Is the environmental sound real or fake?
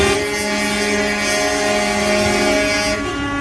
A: real